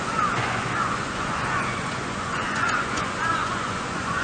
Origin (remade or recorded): remade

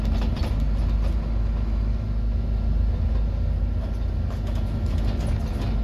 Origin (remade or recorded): recorded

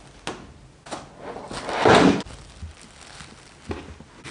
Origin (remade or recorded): recorded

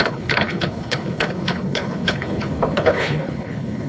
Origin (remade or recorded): remade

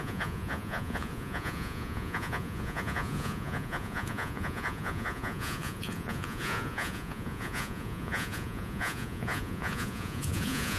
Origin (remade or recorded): remade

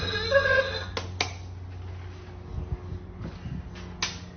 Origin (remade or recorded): recorded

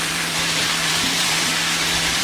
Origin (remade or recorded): remade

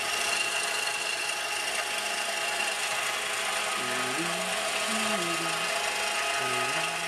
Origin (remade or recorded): recorded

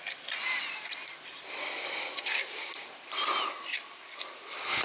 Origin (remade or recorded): recorded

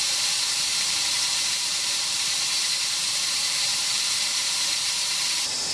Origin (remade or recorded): remade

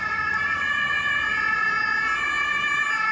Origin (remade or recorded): recorded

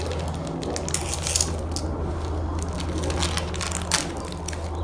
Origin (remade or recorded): recorded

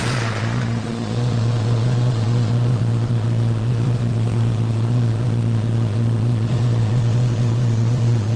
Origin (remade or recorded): remade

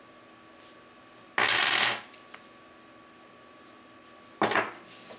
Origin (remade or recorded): recorded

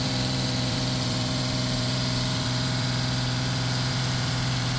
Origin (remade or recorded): remade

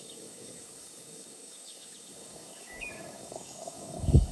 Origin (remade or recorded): remade